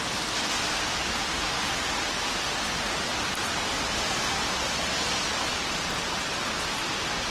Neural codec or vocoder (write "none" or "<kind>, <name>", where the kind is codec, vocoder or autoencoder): none